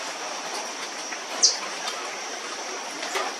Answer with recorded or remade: remade